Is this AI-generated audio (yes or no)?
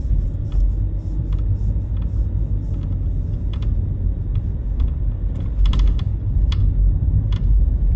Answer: no